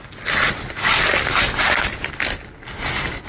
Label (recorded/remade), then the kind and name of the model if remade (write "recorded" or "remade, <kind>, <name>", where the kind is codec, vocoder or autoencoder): recorded